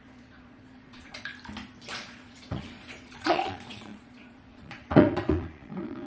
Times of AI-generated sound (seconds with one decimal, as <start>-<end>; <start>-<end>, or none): 0.0-1.3; 1.8-6.1

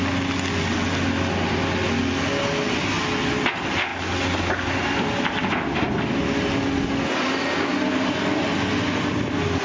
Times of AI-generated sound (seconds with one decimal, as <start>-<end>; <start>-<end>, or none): none

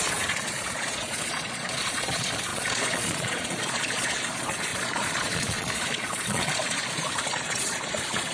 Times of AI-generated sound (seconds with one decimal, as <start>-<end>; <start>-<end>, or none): 0.0-8.3

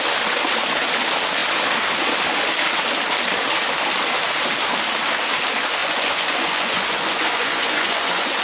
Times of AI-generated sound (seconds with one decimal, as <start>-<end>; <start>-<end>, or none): 5.8-8.4

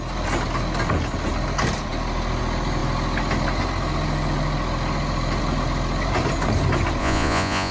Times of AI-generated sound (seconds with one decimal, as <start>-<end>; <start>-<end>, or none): 7.0-7.7

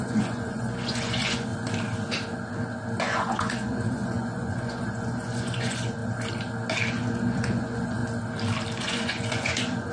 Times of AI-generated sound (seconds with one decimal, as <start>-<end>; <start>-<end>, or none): 0.0-1.5; 3.0-6.0; 6.9-8.0; 8.8-9.9